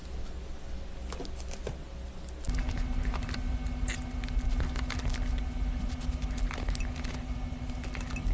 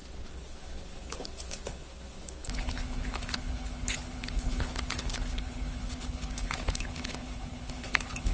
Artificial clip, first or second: second